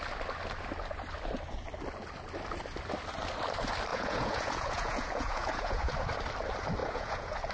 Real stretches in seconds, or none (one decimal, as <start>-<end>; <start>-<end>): 0.0-3.9; 5.9-6.8